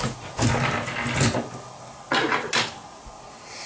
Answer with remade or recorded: recorded